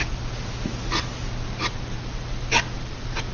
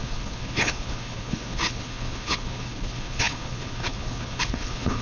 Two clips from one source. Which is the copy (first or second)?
second